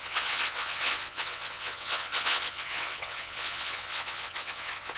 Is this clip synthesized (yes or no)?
yes